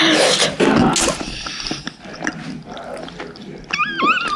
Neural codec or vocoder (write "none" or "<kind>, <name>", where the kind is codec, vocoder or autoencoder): none